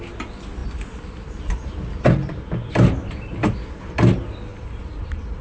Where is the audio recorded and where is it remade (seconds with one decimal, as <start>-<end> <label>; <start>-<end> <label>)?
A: 0.0-4.5 recorded; 4.5-5.4 remade